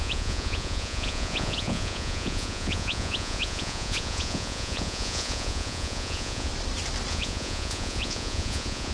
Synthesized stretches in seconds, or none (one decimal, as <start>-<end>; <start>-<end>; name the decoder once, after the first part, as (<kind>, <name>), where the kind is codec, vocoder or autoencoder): 0.0-6.5 (vocoder, Vocos); 7.1-8.9

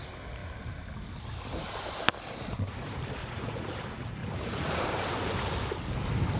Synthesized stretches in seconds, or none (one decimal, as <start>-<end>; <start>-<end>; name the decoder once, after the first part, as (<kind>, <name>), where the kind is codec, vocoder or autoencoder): 3.2-3.8 (vocoder, Vocos); 4.2-4.8

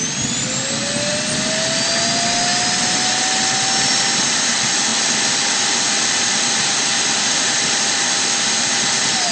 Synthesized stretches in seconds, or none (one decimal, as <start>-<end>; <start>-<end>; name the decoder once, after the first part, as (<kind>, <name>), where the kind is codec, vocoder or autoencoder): none

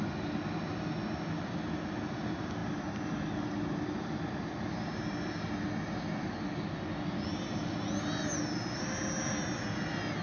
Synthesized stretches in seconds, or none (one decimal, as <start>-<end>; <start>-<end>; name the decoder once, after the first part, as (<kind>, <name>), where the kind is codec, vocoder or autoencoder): none

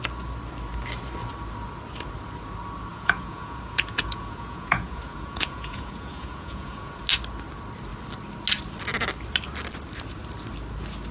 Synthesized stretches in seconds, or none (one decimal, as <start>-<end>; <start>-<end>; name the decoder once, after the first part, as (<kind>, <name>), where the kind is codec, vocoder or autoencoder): 2.9-7.0 (vocoder, Vocos)